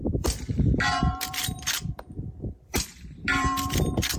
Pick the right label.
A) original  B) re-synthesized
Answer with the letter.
B